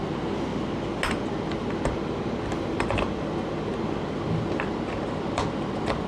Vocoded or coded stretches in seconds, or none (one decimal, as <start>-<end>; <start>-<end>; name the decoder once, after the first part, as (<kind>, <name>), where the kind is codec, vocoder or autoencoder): none